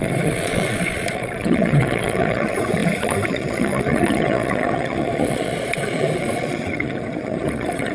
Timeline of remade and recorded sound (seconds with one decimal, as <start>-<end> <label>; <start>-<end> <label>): 0.0-7.9 remade